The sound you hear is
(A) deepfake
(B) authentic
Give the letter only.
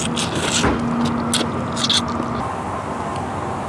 B